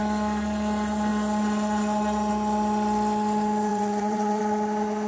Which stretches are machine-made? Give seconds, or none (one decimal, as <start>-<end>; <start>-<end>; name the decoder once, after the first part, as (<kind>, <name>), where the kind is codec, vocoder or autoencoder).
3.7-4.4 (vocoder, WaveNeXt)